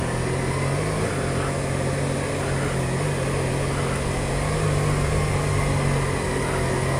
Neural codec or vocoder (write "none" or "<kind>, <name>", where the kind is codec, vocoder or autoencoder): none